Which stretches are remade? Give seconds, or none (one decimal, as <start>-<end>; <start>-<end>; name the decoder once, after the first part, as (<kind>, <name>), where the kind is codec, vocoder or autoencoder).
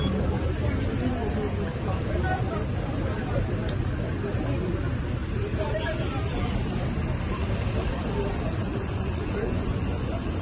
8.7-10.4 (vocoder, Vocos)